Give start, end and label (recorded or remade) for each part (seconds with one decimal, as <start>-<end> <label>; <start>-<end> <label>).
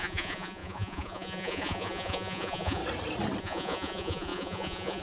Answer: 0.0-2.8 remade; 2.8-3.4 recorded; 3.4-5.0 remade